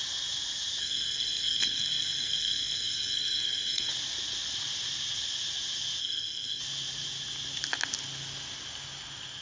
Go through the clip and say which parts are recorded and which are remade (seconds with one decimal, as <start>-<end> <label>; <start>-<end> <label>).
0.0-0.8 recorded; 0.8-3.9 remade; 3.9-6.0 recorded; 6.0-6.6 remade; 6.6-9.4 recorded